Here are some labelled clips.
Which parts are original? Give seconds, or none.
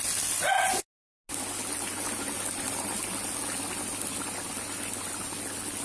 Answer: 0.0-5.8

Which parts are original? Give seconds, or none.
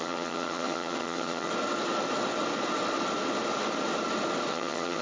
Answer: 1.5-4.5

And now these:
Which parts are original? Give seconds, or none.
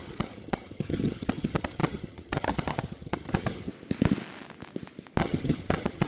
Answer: 3.7-5.2